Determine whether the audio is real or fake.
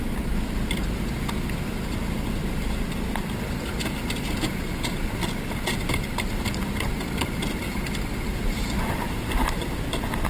real